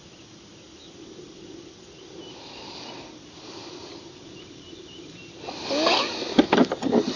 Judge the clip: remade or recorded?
recorded